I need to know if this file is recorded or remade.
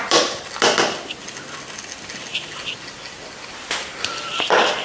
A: recorded